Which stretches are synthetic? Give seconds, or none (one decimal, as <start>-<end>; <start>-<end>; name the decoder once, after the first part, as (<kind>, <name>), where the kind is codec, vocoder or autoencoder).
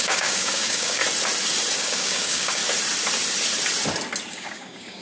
0.0-1.0 (codec, DAC); 1.8-2.6; 4.3-5.0